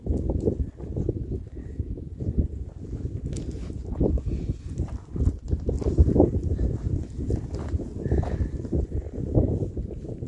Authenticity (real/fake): real